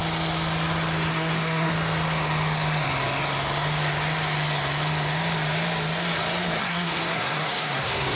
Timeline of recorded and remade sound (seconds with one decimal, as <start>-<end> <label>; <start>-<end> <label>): 0.0-1.1 recorded; 1.1-1.7 remade; 1.7-6.6 recorded; 6.6-8.2 remade